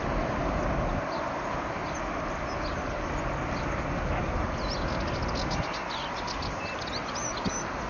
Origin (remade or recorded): recorded